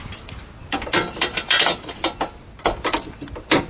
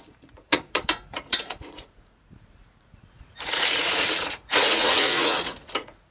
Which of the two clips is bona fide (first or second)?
first